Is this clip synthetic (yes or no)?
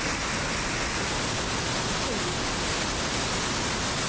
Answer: no